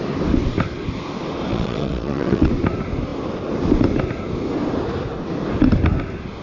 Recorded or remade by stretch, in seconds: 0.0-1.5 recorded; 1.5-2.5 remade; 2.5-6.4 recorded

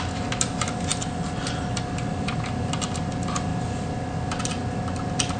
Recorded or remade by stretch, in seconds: 0.0-5.4 recorded